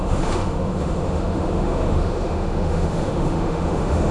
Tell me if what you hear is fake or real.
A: fake